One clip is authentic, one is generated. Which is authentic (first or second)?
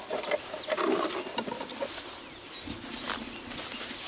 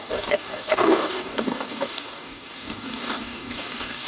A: first